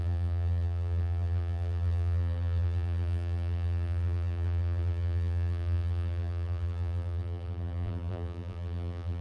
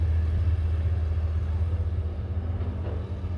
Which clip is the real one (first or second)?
second